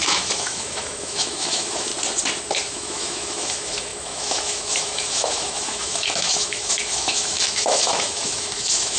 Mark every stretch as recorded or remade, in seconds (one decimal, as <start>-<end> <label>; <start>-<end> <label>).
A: 0.0-1.9 remade; 1.9-2.7 recorded; 2.7-9.0 remade